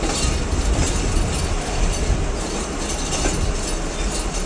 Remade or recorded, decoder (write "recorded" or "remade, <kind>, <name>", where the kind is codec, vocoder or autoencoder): recorded